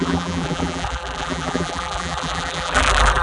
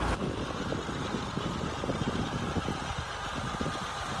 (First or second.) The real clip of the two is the second